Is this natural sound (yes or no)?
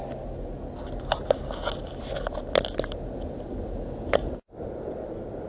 yes